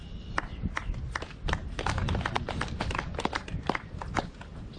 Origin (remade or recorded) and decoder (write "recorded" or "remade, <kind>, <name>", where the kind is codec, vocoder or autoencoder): recorded